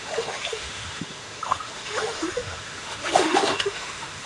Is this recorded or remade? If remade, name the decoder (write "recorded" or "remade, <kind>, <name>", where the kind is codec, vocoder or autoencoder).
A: remade, autoencoder, DAC-VAE